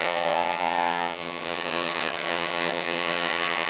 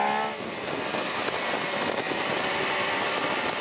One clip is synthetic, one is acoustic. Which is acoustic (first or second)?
second